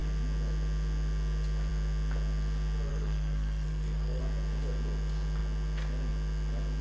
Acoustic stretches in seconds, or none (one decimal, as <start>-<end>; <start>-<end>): 0.0-2.9; 4.2-6.8